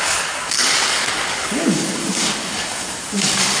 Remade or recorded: remade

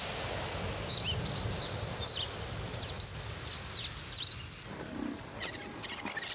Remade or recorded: recorded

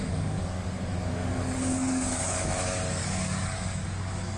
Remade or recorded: remade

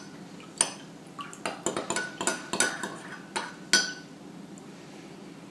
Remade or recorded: recorded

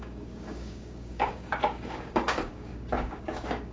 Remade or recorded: remade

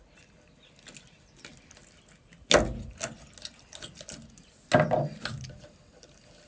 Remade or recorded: recorded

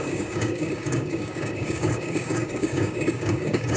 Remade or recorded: remade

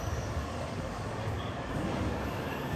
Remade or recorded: remade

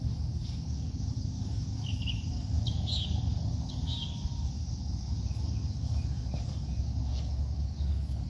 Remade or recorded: remade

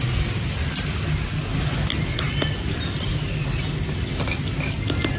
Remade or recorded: recorded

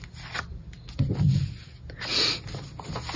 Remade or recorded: recorded